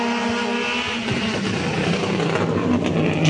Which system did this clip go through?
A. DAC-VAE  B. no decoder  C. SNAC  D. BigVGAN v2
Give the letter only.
B